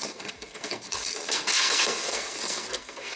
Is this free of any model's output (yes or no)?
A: no